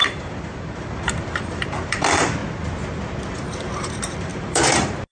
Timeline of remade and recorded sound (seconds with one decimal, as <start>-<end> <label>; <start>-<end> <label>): 0.0-2.4 remade; 2.4-3.3 recorded; 3.3-5.1 remade